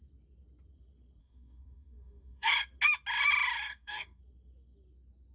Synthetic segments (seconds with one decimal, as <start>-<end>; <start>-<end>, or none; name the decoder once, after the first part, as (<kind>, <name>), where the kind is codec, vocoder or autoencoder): 1.2-2.5 (codec, DAC); 3.7-4.2